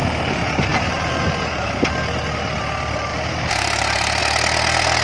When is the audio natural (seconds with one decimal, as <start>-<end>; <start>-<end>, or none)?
1.7-3.1; 4.2-5.0